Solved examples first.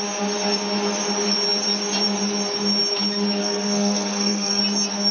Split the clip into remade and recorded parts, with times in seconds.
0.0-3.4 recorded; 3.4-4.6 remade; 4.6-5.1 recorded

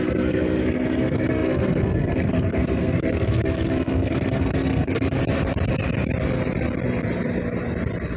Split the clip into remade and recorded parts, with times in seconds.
0.0-5.2 remade; 5.2-8.2 recorded

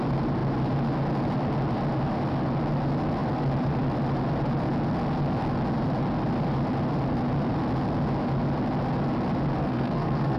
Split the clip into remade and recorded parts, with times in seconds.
0.0-9.6 recorded; 9.6-10.4 remade

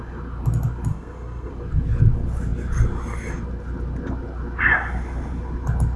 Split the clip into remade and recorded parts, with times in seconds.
0.0-0.9 recorded; 0.9-1.5 remade; 1.5-6.0 recorded

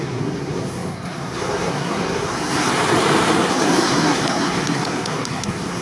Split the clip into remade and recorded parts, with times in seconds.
0.0-2.7 remade; 2.7-3.5 recorded; 3.5-5.8 remade